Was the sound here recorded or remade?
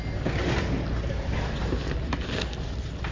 recorded